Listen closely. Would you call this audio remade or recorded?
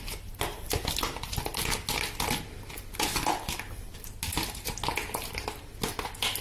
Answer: recorded